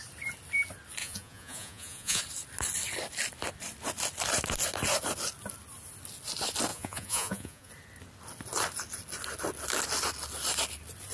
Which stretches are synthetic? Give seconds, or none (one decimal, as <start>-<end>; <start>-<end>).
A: 1.0-2.2; 6.7-7.7